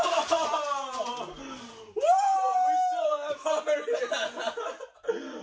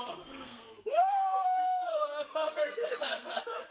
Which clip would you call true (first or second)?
first